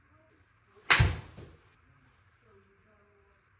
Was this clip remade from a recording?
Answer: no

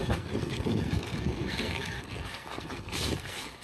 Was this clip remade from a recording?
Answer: yes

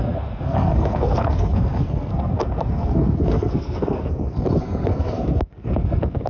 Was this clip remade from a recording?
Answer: yes